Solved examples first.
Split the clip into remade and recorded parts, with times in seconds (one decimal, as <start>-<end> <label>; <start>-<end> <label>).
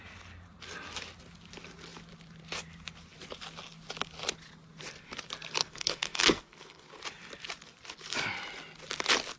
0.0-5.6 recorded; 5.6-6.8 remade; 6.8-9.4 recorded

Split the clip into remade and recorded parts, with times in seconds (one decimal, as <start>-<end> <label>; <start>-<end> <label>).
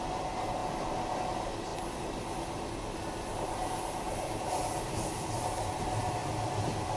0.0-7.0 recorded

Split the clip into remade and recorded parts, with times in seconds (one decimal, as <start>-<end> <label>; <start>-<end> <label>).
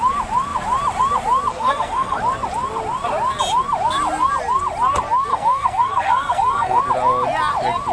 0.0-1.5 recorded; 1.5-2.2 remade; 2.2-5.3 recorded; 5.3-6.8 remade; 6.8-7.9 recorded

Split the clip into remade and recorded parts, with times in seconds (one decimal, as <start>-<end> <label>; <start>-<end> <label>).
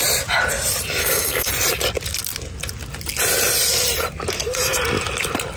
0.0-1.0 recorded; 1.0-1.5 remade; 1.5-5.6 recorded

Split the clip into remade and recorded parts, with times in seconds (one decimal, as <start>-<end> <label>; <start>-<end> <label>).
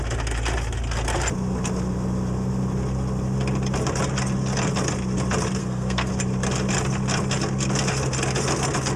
0.0-5.6 recorded; 5.6-6.1 remade; 6.1-9.0 recorded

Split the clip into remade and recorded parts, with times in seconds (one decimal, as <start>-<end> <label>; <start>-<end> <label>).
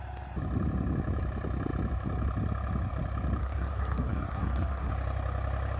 0.0-3.4 recorded; 3.4-4.9 remade; 4.9-5.8 recorded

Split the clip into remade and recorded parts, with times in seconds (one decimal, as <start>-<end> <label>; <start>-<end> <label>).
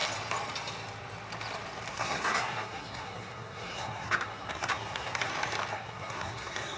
0.0-1.9 recorded; 1.9-5.3 remade; 5.3-5.7 recorded; 5.7-6.8 remade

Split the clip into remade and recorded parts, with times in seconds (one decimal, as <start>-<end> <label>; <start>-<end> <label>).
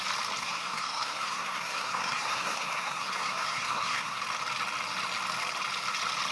0.0-0.4 recorded; 0.4-4.2 remade; 4.2-6.3 recorded